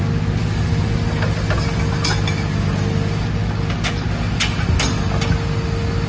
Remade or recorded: recorded